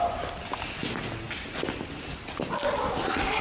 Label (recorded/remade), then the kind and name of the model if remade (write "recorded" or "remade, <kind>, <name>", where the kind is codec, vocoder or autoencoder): recorded